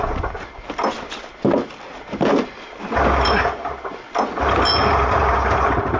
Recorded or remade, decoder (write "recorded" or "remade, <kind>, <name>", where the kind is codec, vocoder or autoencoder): recorded